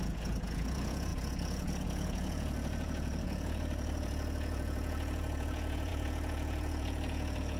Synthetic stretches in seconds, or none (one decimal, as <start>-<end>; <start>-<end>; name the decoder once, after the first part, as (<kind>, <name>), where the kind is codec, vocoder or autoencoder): 0.0-7.6 (vocoder, Vocos)